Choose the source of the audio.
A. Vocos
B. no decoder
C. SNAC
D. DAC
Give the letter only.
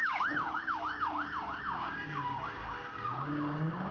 D